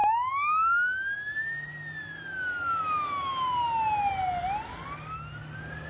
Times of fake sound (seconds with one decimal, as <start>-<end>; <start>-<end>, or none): 2.8-3.3